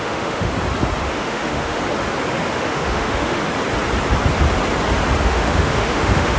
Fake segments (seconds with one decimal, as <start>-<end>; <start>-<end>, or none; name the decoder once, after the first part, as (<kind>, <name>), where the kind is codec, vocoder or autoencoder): 0.0-0.5 (autoencoder, DAC-VAE); 1.0-1.8; 2.5-3.4; 5.2-6.4